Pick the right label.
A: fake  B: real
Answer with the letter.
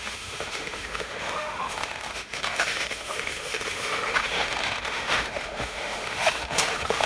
A